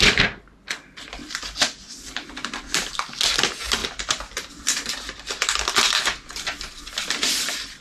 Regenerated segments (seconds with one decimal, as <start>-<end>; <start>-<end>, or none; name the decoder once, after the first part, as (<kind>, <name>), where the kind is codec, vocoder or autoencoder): 1.2-2.9 (vocoder, BigVGAN v2); 3.8-4.9